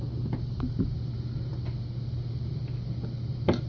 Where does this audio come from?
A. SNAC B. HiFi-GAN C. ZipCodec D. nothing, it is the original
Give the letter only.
D